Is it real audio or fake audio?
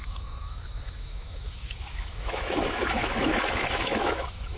fake